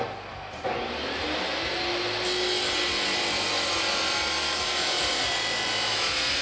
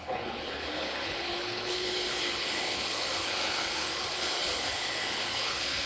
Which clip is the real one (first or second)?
first